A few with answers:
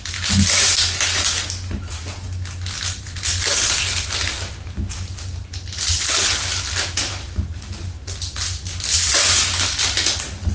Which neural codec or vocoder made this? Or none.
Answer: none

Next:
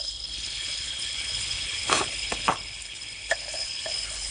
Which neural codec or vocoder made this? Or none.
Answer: codec, HILCodec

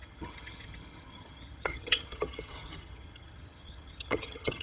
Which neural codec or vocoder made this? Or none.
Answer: vocoder, HiFi-GAN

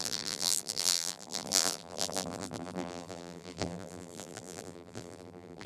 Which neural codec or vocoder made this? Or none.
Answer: vocoder, BigVGAN v2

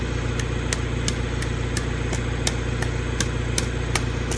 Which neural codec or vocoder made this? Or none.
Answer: none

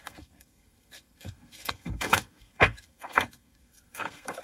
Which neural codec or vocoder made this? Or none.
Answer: codec, SNAC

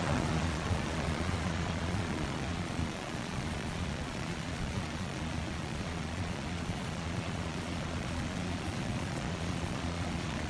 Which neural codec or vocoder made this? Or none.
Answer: vocoder, Vocos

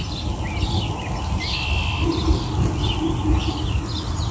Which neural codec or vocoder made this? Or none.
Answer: none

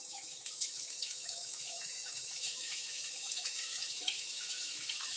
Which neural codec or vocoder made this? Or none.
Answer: autoencoder, DAC-VAE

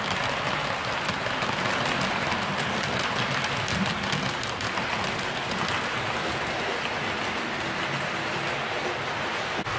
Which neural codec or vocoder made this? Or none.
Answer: none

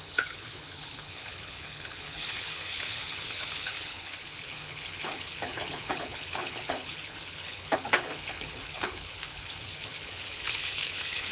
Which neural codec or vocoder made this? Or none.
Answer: codec, HILCodec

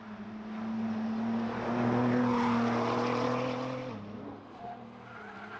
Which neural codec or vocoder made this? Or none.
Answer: none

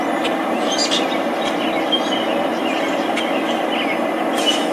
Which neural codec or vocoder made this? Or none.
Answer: none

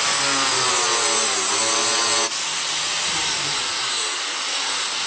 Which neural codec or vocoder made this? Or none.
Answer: none